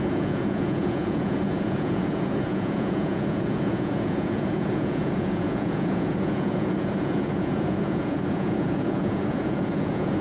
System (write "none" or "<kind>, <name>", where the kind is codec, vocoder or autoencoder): vocoder, Vocos